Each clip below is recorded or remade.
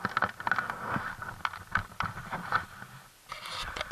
recorded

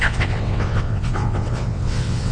remade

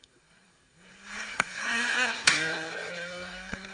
remade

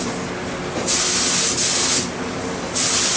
recorded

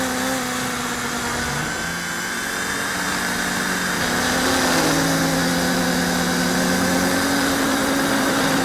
recorded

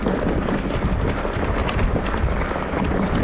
recorded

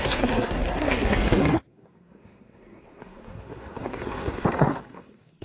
remade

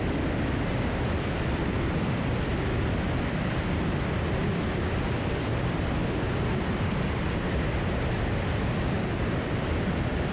remade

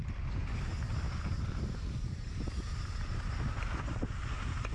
recorded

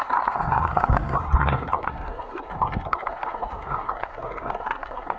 remade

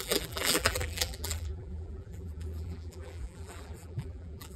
remade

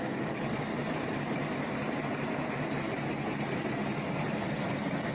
recorded